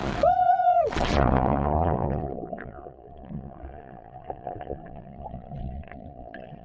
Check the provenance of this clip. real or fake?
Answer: fake